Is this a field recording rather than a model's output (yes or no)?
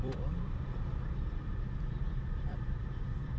no